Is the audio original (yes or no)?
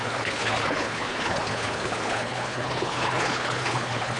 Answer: no